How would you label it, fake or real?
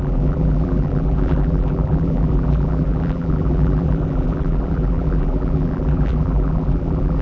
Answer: fake